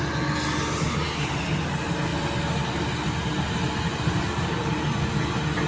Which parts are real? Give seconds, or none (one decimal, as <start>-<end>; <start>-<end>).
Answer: 0.0-5.7